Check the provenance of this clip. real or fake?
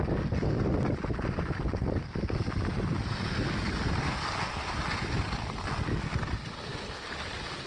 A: real